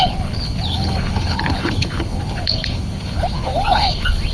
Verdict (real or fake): fake